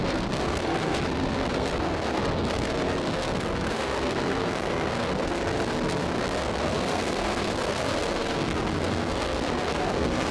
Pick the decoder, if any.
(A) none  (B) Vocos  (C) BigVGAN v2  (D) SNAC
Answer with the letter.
D